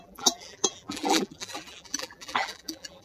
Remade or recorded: remade